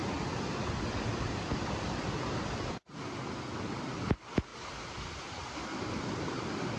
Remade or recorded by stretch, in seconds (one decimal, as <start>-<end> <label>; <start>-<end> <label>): 0.0-6.8 recorded